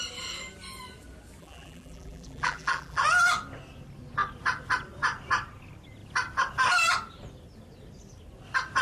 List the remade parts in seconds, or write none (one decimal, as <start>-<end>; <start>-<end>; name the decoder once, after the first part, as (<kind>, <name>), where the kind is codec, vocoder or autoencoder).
1.4-3.0 (vocoder, BigVGAN v2)